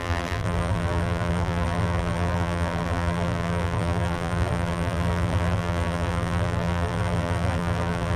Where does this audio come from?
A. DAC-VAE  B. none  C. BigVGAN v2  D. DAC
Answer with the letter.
C